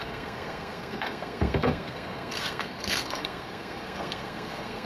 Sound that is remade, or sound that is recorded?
remade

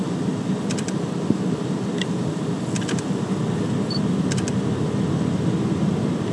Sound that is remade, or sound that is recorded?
recorded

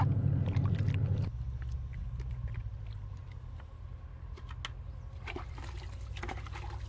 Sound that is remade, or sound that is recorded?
recorded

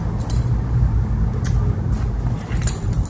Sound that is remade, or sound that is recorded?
recorded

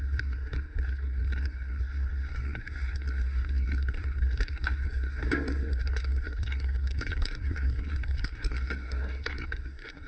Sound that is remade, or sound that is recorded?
remade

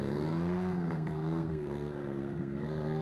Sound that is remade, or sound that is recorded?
remade